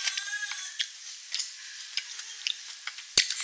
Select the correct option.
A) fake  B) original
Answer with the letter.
B